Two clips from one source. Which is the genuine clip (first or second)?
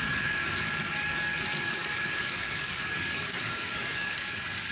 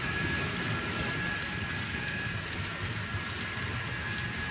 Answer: second